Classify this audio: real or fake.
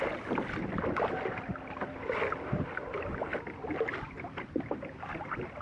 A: real